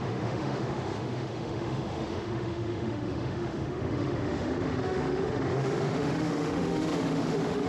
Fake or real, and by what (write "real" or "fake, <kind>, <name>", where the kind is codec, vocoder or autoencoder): fake, autoencoder, DAC-VAE